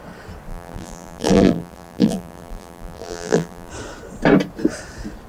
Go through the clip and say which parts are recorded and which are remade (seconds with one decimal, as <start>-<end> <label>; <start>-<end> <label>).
0.0-0.5 recorded; 0.5-3.7 remade; 3.7-5.3 recorded